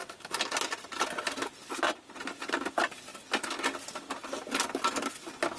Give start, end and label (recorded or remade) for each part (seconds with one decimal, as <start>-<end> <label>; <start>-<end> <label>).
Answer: 0.0-5.6 recorded

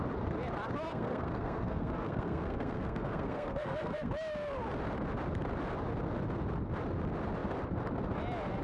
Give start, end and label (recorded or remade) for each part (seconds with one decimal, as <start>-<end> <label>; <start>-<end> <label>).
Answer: 0.0-0.9 recorded; 0.9-4.1 remade; 4.1-8.6 recorded

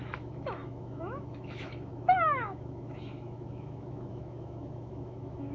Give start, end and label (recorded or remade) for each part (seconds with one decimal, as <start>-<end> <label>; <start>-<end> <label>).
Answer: 0.0-5.5 remade

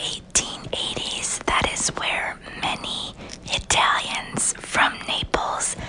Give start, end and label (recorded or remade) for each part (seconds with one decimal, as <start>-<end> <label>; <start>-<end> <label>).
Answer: 0.0-5.9 recorded

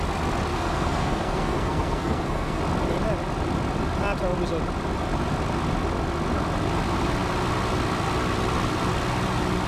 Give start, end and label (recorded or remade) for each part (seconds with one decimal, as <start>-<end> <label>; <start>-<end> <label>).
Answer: 0.0-0.5 recorded; 0.5-2.6 remade; 2.6-9.7 recorded